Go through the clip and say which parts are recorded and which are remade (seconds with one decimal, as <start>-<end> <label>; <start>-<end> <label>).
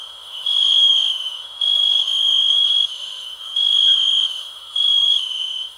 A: 0.0-5.8 remade